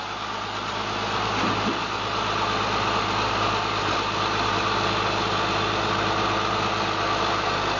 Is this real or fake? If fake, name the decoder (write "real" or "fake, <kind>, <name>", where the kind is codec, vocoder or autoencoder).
real